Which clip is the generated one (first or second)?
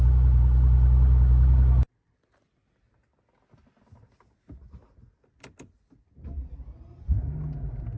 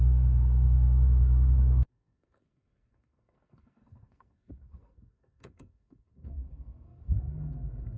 second